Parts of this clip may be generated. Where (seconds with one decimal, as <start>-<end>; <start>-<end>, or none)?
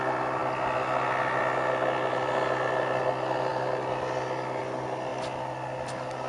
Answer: none